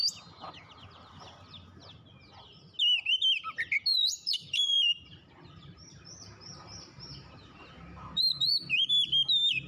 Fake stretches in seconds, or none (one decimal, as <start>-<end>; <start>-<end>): 0.0-0.6; 3.9-8.9